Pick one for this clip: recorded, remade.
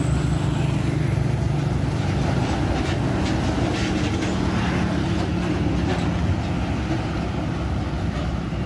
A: recorded